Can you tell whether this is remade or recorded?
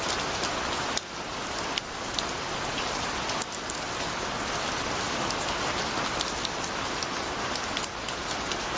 recorded